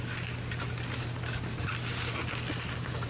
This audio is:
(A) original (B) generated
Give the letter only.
A